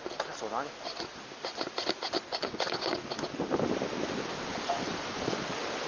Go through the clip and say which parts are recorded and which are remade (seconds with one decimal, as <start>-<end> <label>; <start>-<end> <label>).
0.0-2.3 recorded; 2.3-2.9 remade; 2.9-4.5 recorded; 4.5-5.4 remade; 5.4-5.9 recorded